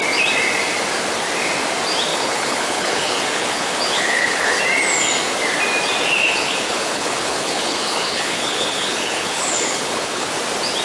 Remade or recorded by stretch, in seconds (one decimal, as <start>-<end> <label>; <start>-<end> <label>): 0.0-2.1 recorded; 2.1-4.6 remade; 4.6-6.2 recorded; 6.2-10.3 remade; 10.3-10.8 recorded